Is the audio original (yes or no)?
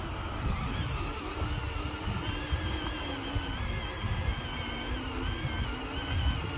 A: yes